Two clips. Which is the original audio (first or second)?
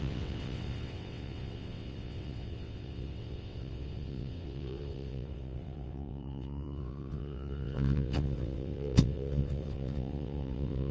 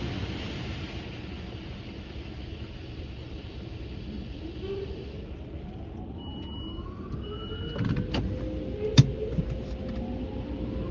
second